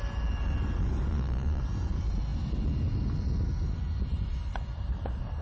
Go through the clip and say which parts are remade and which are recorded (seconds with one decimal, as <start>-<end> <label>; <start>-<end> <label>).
0.0-1.1 recorded; 1.1-1.6 remade; 1.6-5.4 recorded